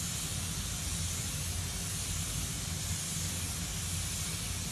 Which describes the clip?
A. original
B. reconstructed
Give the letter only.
A